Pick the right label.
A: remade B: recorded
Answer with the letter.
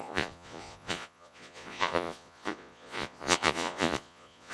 A